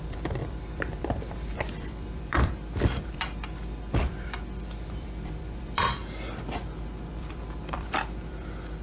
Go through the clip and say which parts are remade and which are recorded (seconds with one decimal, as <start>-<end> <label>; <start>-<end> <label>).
0.0-6.0 remade; 6.0-7.1 recorded; 7.1-8.8 remade

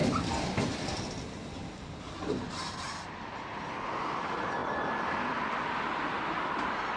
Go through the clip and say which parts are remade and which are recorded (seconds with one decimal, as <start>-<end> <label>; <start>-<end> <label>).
0.0-0.6 remade; 0.6-1.6 recorded; 1.6-3.5 remade; 3.5-4.6 recorded; 4.6-5.8 remade; 5.8-7.0 recorded

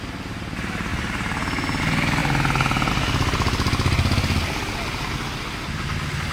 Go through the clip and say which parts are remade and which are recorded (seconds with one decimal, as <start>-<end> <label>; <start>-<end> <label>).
0.0-6.3 recorded